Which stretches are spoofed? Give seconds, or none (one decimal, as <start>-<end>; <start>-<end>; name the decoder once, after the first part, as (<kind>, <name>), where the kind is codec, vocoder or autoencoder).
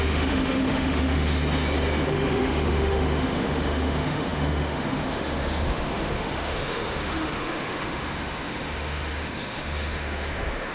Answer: 0.0-1.4 (autoencoder, DAC-VAE); 2.1-10.7